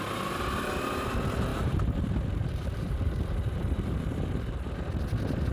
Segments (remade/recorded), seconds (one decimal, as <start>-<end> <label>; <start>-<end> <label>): 0.0-1.5 recorded; 1.5-4.7 remade; 4.7-5.5 recorded